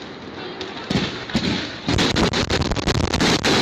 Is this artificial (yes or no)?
no